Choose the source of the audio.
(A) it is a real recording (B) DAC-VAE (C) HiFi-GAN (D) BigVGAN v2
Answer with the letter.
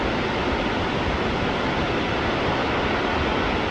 A